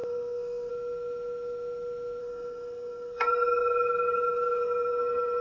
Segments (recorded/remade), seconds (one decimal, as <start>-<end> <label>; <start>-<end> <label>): 0.0-0.7 remade; 0.7-2.2 recorded; 2.2-5.4 remade